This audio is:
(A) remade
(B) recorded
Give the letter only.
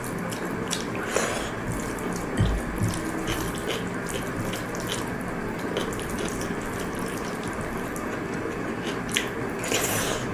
B